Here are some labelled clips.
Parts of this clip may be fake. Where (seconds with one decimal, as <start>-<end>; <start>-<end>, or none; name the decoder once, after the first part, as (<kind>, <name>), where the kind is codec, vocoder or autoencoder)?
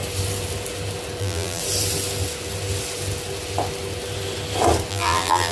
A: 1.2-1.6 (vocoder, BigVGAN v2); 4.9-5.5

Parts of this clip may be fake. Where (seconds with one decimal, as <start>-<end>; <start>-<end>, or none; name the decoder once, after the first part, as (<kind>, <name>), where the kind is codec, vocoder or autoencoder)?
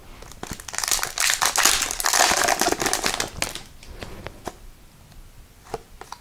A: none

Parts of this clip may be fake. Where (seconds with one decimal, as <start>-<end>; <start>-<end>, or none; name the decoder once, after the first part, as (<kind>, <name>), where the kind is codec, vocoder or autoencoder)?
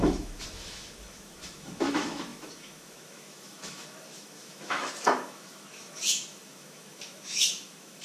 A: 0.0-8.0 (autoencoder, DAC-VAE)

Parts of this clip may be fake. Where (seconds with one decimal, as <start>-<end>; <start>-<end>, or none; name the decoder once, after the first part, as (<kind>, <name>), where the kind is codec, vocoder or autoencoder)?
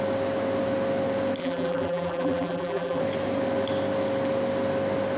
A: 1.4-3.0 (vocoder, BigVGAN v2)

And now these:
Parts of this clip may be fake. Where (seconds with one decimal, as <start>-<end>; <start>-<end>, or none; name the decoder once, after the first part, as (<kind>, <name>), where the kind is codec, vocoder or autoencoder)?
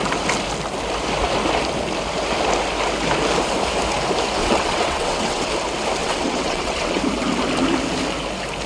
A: 4.4-5.5 (vocoder, WaveNeXt); 6.0-7.0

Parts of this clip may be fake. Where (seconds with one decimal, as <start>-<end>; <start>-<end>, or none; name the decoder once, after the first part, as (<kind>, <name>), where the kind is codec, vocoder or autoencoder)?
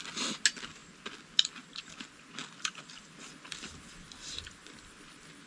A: 2.4-3.3 (vocoder, BigVGAN v2)